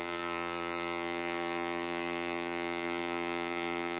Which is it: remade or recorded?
remade